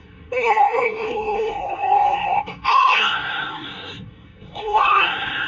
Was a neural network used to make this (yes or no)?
yes